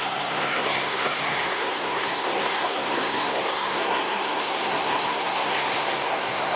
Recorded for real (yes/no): no